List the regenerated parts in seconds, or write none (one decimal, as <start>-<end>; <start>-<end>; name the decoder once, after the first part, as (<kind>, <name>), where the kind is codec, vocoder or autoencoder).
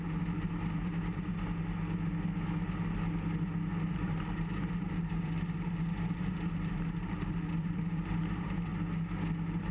0.0-1.3 (vocoder, BigVGAN v2); 3.9-8.7